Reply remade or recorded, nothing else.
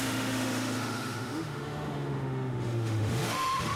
remade